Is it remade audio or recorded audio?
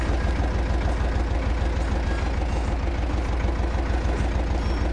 recorded